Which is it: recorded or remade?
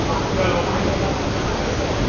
recorded